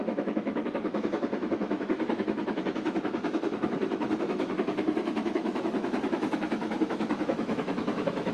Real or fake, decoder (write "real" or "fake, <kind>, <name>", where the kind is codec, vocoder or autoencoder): fake, autoencoder, DAC-VAE